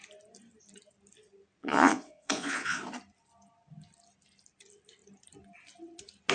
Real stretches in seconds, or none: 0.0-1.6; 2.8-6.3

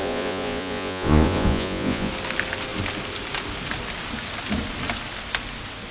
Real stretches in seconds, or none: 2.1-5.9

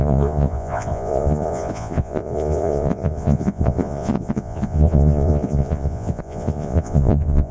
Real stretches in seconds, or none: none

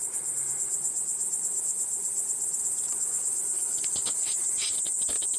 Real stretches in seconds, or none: 0.0-5.4

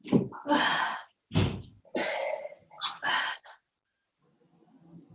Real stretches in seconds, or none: 0.0-5.1

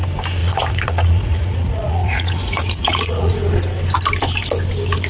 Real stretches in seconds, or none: 0.0-0.4; 3.3-5.1

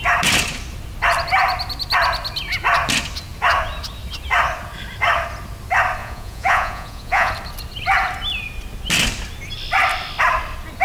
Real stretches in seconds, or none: 0.0-6.0; 7.3-10.8